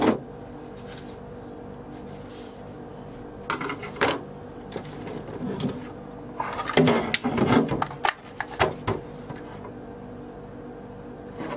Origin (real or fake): real